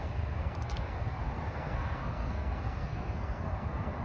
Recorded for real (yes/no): no